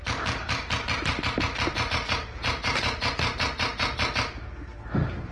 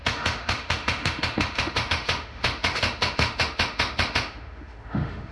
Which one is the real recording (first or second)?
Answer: first